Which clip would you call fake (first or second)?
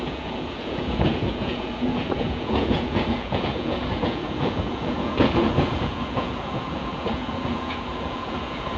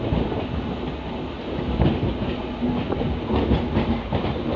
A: first